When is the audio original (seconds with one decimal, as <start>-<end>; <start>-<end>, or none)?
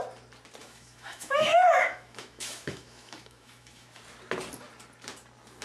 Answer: 0.0-0.6; 4.0-5.6